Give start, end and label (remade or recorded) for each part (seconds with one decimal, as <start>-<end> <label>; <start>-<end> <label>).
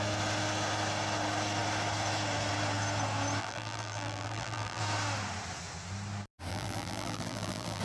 0.0-3.4 recorded; 3.4-4.8 remade; 4.8-6.5 recorded; 6.5-7.8 remade